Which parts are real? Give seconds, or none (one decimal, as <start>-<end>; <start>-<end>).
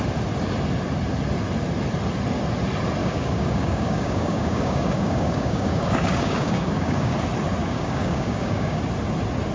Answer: 0.0-3.0; 7.1-7.6; 8.8-9.5